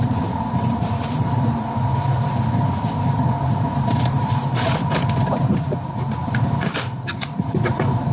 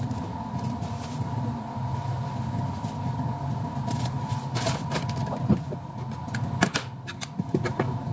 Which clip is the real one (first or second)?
second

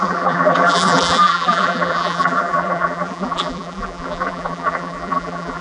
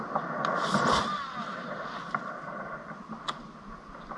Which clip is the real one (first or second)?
second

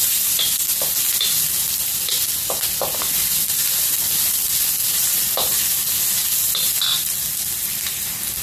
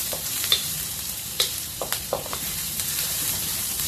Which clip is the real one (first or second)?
first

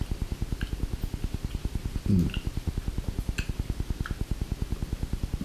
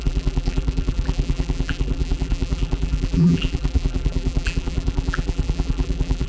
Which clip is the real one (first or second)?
first